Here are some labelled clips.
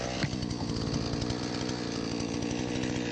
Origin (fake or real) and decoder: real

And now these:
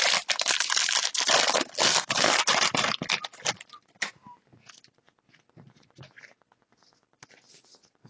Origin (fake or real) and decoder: real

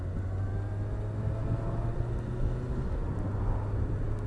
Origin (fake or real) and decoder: real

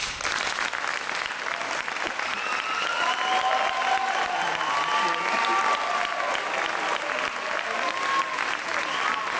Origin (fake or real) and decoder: real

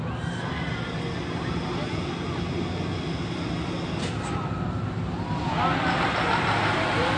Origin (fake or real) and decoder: real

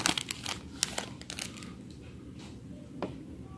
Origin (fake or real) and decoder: real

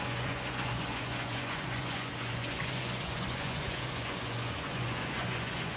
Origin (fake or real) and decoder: fake, vocoder, Vocos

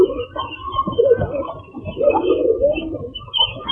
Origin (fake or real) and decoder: real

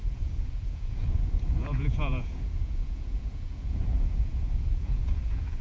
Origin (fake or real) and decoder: fake, vocoder, Vocos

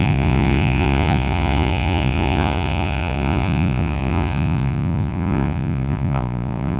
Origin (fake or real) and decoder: fake, vocoder, Vocos